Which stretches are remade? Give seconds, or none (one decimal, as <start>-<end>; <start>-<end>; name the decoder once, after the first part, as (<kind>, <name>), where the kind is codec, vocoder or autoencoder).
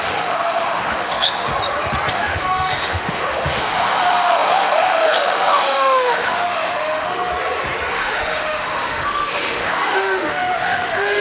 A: 0.0-1.5 (autoencoder, DAC-VAE); 2.1-7.3; 7.9-11.2